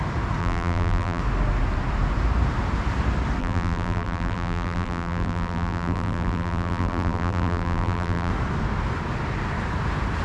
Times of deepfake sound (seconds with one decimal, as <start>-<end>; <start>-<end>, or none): 0.4-1.2; 3.4-8.3

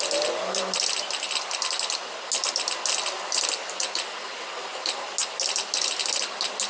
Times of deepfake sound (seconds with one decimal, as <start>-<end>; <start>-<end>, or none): none

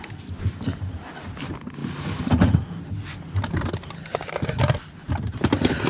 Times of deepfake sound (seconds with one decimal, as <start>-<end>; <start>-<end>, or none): none